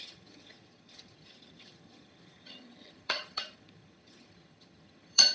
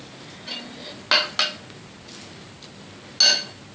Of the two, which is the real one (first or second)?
second